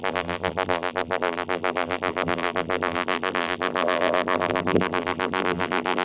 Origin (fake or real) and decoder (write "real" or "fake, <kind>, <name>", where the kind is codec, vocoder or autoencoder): fake, vocoder, BigVGAN v2